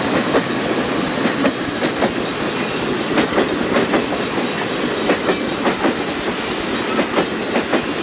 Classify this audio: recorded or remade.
recorded